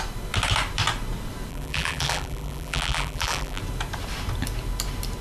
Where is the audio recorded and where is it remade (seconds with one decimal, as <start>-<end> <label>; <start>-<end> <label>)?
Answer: 0.0-1.5 recorded; 1.5-3.6 remade; 3.6-5.2 recorded